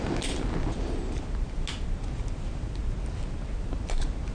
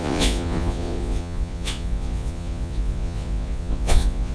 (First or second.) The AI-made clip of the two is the second